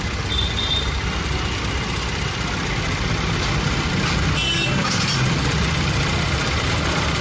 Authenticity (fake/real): fake